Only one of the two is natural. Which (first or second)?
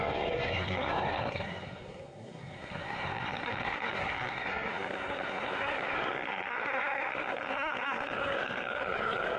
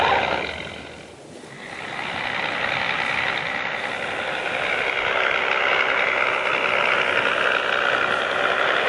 second